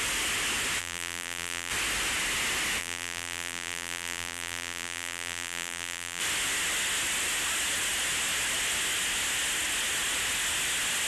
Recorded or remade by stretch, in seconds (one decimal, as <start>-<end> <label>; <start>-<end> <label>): 0.0-0.8 recorded; 0.8-1.7 remade; 1.7-2.8 recorded; 2.8-6.2 remade; 6.2-11.1 recorded